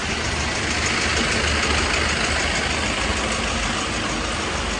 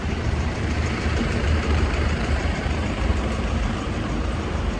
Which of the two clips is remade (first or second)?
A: second